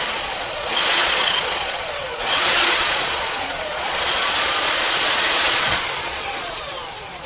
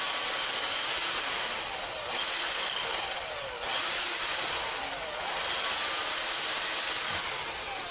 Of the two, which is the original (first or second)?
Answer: second